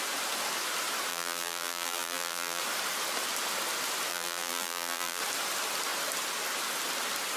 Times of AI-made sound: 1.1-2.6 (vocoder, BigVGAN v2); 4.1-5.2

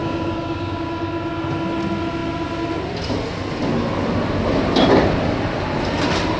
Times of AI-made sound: 0.0-0.9 (codec, DAC)

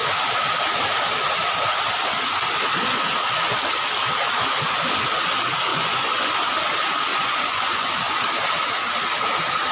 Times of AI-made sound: 5.7-6.3 (vocoder, Vocos); 7.1-7.9

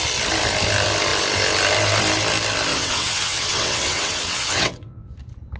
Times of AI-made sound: 2.7-5.1 (vocoder, WaveNeXt)

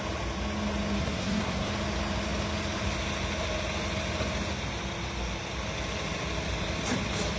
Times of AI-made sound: 1.0-1.7 (codec, SNAC)

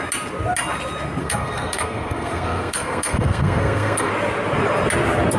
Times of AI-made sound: 1.2-4.1 (codec, SNAC)

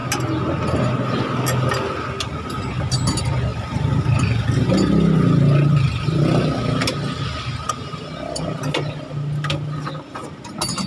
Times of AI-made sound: none